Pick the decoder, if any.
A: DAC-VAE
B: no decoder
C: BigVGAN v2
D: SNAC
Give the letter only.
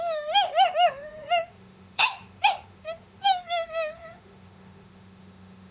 A